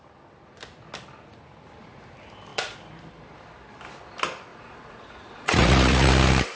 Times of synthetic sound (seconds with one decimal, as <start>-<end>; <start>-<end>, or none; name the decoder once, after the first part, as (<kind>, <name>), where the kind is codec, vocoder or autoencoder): 4.5-6.1 (vocoder, Vocos)

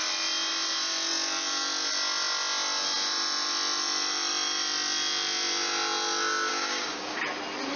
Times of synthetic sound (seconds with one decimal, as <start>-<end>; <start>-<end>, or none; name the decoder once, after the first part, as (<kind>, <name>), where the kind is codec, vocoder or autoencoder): 6.5-7.2 (codec, DAC)

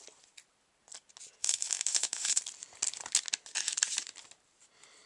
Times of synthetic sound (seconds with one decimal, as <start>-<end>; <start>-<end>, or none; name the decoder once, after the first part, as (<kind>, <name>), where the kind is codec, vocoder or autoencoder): 1.4-2.4 (autoencoder, DAC-VAE)

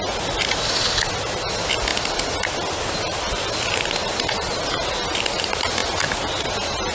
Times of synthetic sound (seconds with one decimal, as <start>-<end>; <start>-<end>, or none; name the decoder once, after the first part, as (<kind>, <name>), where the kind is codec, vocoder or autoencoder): none

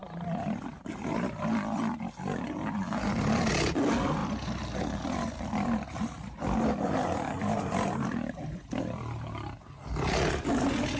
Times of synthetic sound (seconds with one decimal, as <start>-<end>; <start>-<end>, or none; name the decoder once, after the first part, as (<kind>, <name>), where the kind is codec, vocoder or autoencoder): none

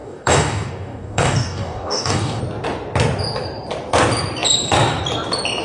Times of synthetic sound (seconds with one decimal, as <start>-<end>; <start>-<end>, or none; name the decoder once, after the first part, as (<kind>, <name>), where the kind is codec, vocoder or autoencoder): 0.0-2.4 (codec, DAC)

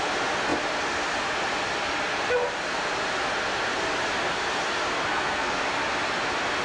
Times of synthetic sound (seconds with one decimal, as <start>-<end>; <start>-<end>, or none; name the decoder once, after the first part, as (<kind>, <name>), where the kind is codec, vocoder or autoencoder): 5.1-5.6 (codec, SNAC)